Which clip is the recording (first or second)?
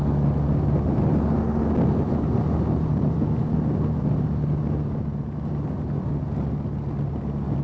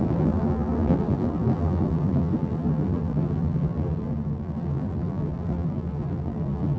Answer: first